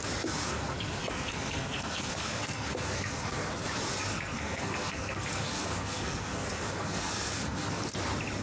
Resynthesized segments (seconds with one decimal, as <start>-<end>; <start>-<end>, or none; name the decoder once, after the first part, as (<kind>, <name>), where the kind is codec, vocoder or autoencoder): 0.4-3.5 (codec, SNAC); 4.0-7.8